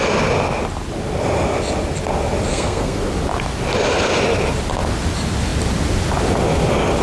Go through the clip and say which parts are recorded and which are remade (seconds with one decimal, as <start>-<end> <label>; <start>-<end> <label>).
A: 0.0-2.5 recorded; 2.5-3.0 remade; 3.0-7.0 recorded